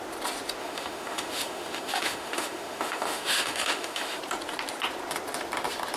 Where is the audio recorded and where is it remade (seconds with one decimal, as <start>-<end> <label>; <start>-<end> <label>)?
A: 0.0-0.6 recorded; 0.6-4.2 remade; 4.2-6.0 recorded